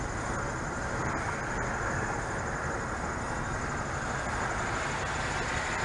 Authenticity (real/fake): real